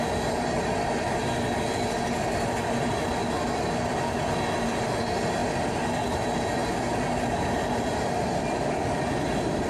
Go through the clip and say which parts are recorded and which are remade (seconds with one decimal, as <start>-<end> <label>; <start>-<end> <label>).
0.0-9.7 recorded